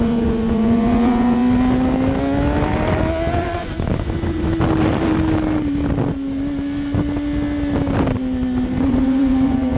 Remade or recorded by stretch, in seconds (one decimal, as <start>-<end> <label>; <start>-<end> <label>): 0.0-1.4 remade; 1.4-3.3 recorded; 3.3-4.5 remade; 4.5-8.8 recorded; 8.8-9.8 remade